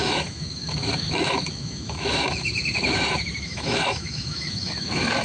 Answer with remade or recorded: remade